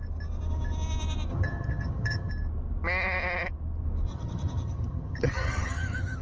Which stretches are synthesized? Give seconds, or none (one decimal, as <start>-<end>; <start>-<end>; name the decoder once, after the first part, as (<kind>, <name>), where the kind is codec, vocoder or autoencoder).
1.3-2.3 (vocoder, HiFi-GAN); 4.1-6.2